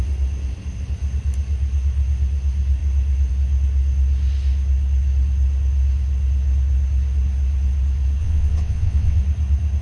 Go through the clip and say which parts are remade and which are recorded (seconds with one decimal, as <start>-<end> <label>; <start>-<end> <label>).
0.0-8.2 recorded; 8.2-9.2 remade; 9.2-9.8 recorded